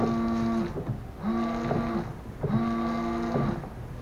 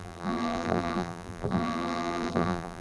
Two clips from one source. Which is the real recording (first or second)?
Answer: first